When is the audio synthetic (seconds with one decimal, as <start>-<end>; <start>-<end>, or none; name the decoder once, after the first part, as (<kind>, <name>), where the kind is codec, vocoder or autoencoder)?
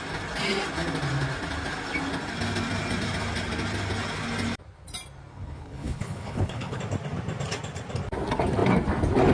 5.3-6.8 (codec, HILCodec)